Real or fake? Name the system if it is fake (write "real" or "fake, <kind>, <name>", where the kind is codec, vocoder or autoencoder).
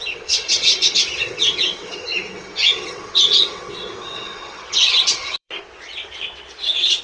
fake, vocoder, WaveNeXt